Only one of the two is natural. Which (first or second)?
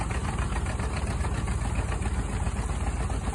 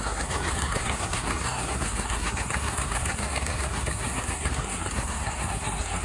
first